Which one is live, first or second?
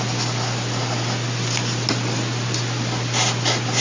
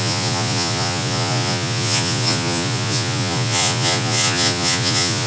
first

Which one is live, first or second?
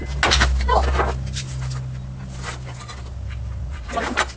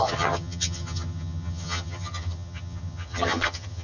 first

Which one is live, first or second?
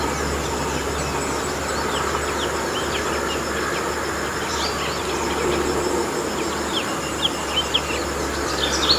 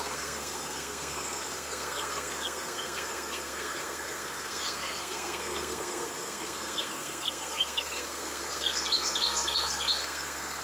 first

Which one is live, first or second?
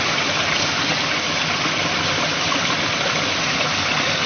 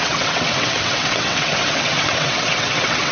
first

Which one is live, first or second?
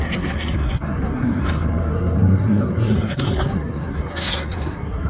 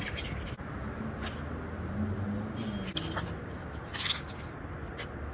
second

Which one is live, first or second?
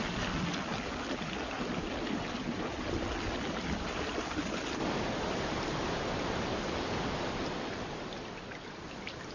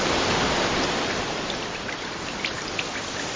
first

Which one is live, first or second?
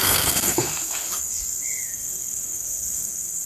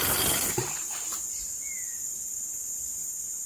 second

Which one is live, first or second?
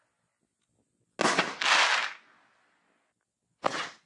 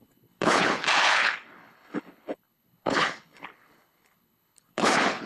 first